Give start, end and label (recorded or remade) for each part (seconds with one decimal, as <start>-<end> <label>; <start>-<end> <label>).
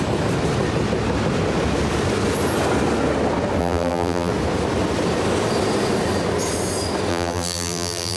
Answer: 0.0-3.6 recorded; 3.6-4.3 remade; 4.3-7.1 recorded; 7.1-8.2 remade